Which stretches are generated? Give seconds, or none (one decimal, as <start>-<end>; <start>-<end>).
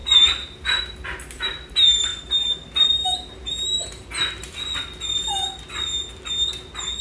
none